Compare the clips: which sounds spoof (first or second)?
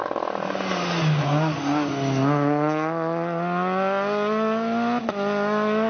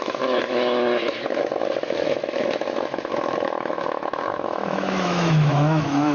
second